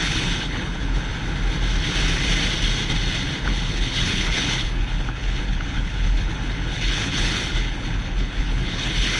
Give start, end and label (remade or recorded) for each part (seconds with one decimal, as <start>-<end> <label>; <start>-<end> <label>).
0.0-1.1 remade; 1.1-3.4 recorded; 3.4-9.2 remade